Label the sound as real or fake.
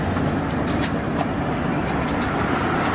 real